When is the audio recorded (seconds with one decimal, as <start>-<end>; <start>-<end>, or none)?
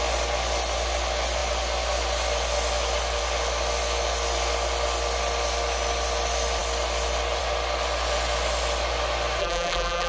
0.0-9.4